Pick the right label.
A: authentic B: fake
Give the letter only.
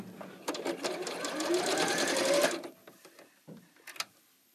A